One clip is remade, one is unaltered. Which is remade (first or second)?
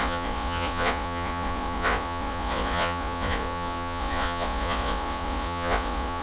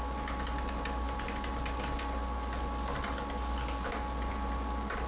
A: first